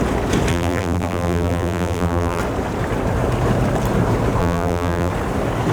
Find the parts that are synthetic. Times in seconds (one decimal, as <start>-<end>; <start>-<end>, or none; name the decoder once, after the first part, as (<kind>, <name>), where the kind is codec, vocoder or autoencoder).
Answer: 0.5-2.4 (vocoder, BigVGAN v2); 4.4-5.1